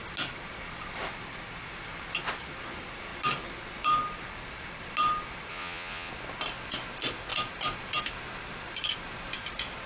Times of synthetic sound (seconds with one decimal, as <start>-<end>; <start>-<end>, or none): 5.5-6.1